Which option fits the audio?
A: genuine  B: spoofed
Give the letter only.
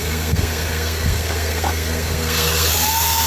B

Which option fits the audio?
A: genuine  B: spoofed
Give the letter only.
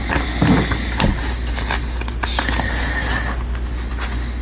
A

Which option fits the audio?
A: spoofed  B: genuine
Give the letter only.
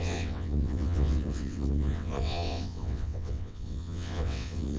A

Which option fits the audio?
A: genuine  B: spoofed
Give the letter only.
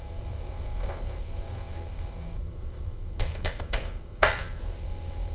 B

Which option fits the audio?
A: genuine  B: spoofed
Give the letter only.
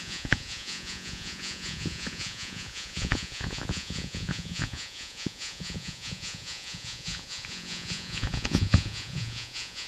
B